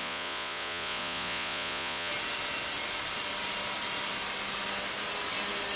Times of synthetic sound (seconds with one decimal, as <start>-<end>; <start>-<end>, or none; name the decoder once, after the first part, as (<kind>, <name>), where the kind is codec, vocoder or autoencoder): 0.0-2.1 (vocoder, Vocos)